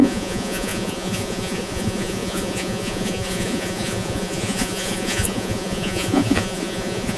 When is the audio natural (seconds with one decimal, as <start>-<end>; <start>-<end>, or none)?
none